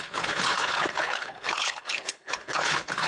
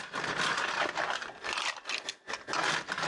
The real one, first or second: second